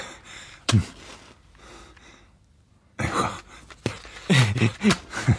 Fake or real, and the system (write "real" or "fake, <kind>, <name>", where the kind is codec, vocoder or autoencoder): real